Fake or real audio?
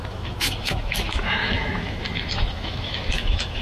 fake